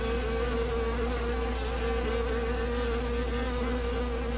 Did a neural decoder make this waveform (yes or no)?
no